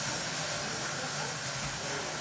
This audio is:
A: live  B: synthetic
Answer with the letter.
A